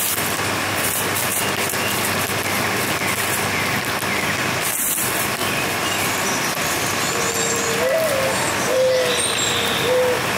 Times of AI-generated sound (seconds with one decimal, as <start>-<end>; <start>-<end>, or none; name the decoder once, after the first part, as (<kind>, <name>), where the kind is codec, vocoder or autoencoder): 0.0-1.3 (vocoder, BigVGAN v2); 4.8-10.4

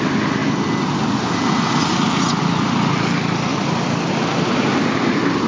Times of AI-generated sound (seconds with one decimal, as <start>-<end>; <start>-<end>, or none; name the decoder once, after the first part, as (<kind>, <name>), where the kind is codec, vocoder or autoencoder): 3.5-4.1 (vocoder, BigVGAN v2)

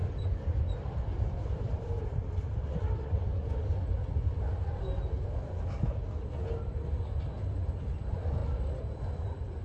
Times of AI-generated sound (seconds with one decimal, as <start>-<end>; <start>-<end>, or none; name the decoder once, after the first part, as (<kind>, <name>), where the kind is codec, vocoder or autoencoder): 0.0-3.3 (vocoder, BigVGAN v2); 7.2-9.6